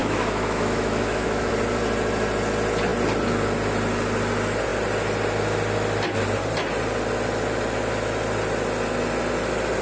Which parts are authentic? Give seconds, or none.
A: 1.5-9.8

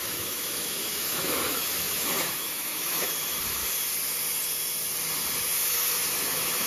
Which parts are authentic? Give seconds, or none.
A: 3.6-5.7

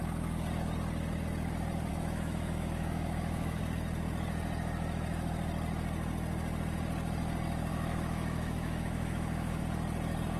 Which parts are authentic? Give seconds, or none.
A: 0.0-1.9; 3.6-7.7; 9.6-10.4

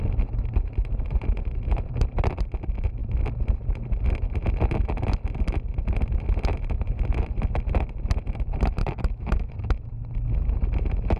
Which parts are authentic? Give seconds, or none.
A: 0.0-8.8; 9.5-11.2

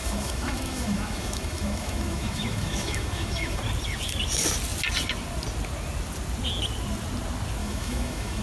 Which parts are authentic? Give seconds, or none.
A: 3.6-7.6

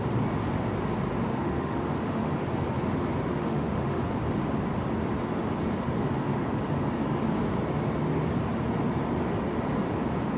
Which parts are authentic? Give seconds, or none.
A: 0.0-1.3; 2.3-3.3; 4.0-10.4

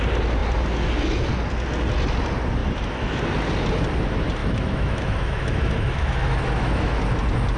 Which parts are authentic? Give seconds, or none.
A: 0.0-2.6; 3.2-4.4; 7.0-7.6